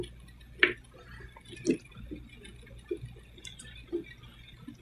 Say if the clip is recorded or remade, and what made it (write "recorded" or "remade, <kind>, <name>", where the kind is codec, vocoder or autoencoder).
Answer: recorded